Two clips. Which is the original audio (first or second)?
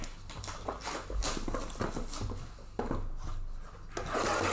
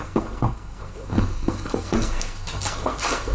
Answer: first